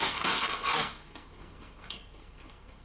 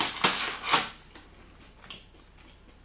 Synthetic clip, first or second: first